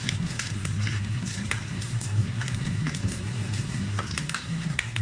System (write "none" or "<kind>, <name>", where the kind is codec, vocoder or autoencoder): codec, SNAC